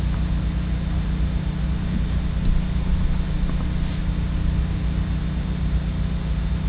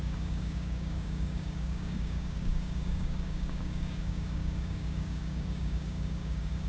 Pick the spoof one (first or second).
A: second